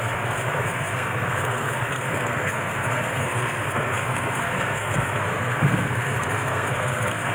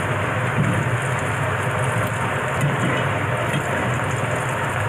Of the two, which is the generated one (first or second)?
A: first